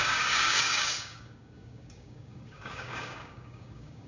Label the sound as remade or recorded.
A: remade